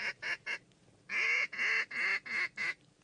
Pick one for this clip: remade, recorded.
recorded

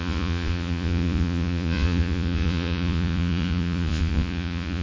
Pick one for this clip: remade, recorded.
remade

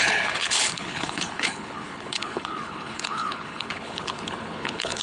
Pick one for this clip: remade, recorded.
remade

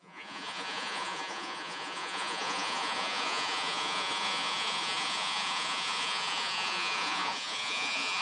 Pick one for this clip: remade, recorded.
remade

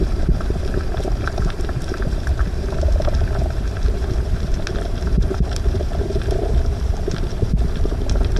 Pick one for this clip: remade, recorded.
remade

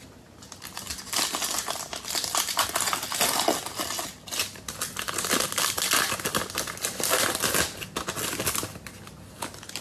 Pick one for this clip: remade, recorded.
recorded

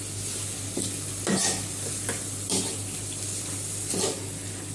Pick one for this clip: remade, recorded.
recorded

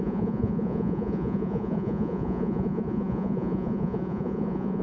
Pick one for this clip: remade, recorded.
remade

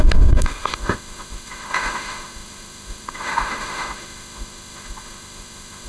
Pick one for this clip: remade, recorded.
remade